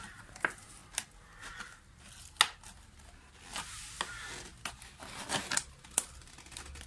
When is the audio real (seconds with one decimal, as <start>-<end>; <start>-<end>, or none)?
0.8-4.7